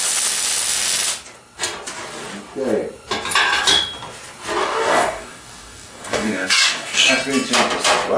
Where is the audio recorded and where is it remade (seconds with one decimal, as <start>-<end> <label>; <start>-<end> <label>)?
0.0-4.6 recorded; 4.6-7.1 remade; 7.1-8.2 recorded